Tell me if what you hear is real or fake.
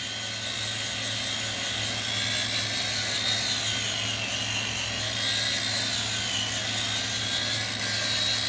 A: real